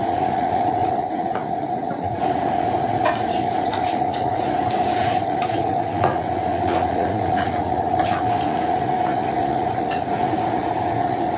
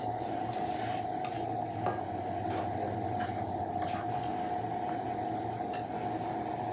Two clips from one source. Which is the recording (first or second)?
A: second